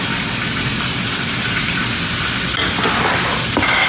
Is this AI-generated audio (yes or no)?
no